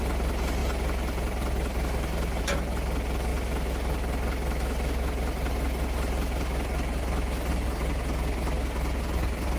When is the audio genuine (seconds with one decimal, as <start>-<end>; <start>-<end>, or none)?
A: 0.0-9.6